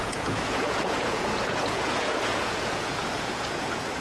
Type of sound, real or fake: fake